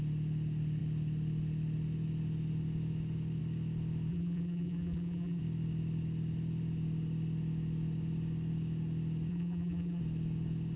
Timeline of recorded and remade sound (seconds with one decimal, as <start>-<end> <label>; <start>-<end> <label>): 0.0-4.1 recorded; 4.1-5.4 remade; 5.4-9.3 recorded; 9.3-10.0 remade; 10.0-10.8 recorded